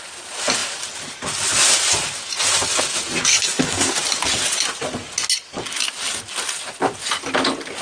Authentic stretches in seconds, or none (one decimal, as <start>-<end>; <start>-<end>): 0.0-3.3; 3.9-7.8